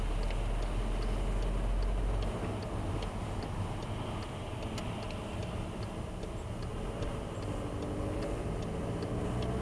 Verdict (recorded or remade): recorded